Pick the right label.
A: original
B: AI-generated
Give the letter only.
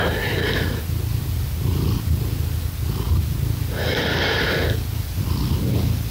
A